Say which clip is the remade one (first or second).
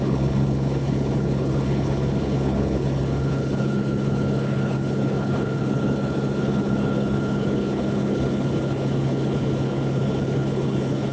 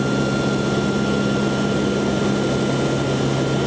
first